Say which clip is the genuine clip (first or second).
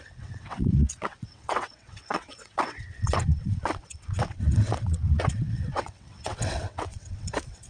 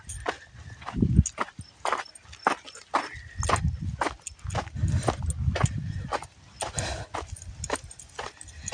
second